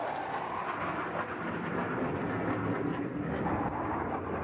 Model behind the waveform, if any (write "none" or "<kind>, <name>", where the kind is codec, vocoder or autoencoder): none